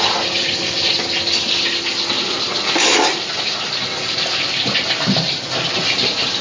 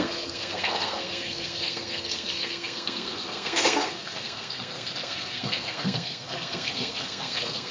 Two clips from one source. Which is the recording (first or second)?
first